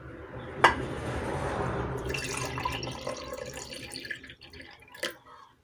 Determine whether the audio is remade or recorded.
remade